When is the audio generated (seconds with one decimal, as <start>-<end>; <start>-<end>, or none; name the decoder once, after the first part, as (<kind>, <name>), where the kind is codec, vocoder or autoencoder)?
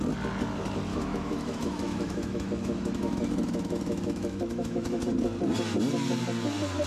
0.9-5.0 (autoencoder, DAC-VAE)